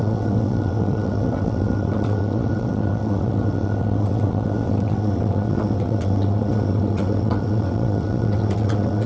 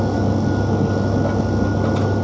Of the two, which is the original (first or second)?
second